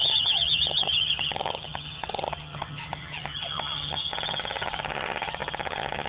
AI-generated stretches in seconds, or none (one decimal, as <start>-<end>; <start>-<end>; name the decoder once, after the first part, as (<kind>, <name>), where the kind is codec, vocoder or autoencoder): 0.0-6.1 (vocoder, HiFi-GAN)